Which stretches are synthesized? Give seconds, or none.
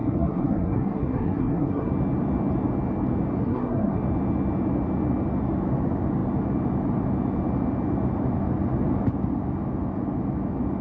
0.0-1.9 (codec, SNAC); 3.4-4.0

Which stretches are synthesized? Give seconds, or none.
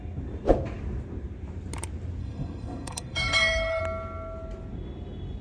2.2-3.8 (codec, SNAC)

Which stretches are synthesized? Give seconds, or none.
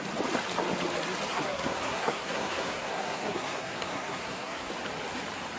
1.3-4.7 (codec, SNAC)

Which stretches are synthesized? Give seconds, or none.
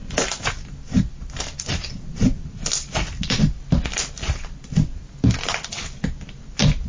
none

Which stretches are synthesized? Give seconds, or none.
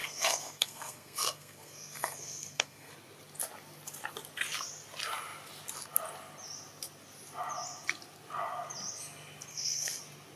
0.0-2.9 (codec, SNAC); 9.5-10.0